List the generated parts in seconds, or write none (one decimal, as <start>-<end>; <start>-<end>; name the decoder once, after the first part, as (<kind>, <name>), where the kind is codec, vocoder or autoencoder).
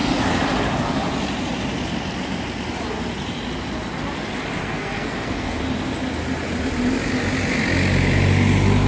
4.6-5.6 (codec, SNAC)